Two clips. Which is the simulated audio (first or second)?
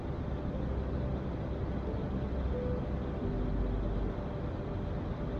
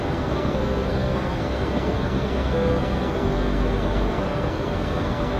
second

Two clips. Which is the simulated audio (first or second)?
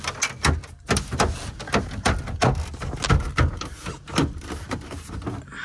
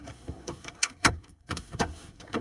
second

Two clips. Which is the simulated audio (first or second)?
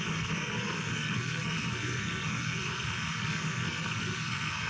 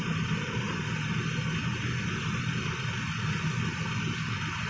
first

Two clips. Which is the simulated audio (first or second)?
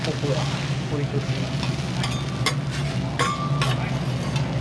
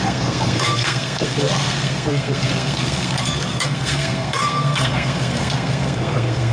second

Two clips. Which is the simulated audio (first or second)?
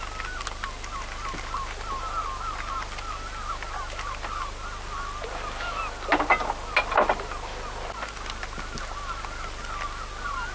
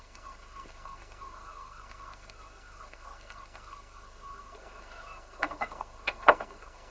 second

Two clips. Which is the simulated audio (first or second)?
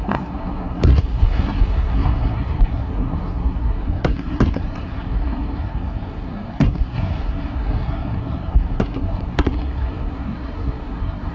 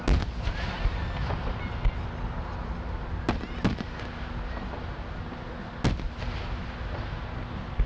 first